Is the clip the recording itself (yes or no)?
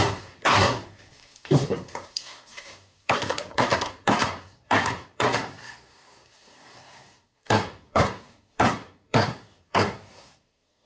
no